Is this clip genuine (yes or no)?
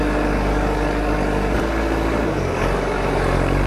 no